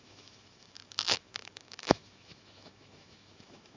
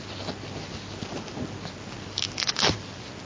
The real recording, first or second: second